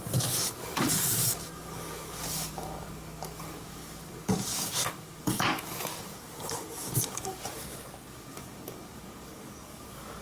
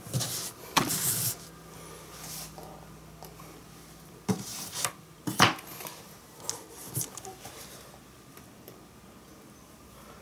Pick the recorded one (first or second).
second